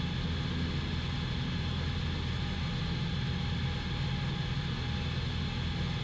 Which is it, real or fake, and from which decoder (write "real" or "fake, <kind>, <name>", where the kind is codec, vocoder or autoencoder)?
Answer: real